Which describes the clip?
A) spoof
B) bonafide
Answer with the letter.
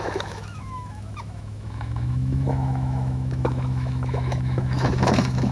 A